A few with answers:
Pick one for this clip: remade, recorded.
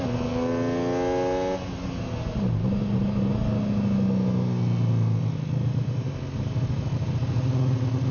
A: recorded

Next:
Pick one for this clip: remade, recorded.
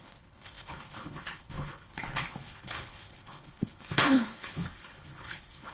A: remade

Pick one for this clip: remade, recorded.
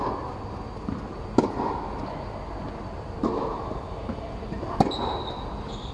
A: recorded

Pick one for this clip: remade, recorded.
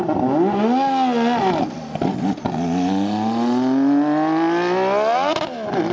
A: recorded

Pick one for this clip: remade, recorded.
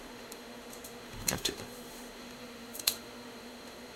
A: remade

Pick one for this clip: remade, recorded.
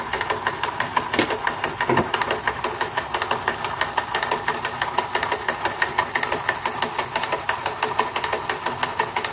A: recorded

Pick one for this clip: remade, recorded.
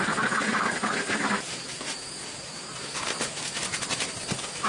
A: recorded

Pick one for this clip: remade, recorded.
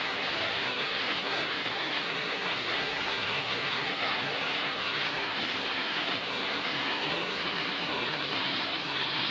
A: remade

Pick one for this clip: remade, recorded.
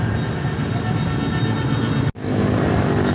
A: recorded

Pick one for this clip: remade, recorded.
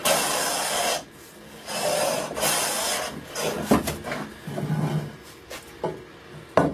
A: recorded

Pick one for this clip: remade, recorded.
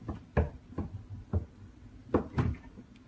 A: recorded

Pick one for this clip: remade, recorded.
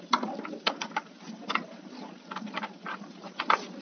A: recorded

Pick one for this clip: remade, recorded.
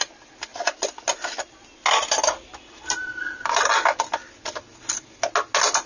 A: recorded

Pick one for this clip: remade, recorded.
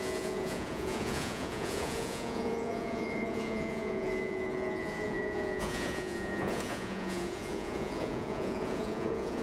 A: remade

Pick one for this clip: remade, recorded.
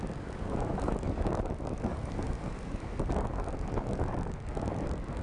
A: remade